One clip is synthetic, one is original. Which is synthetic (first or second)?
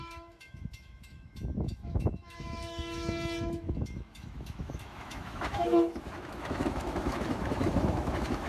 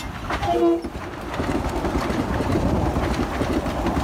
first